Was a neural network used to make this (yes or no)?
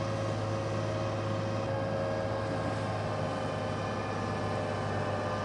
no